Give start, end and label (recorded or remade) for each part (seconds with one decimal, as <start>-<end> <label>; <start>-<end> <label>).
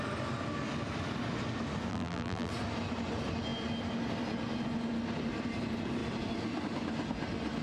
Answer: 0.0-1.9 recorded; 1.9-2.5 remade; 2.5-7.6 recorded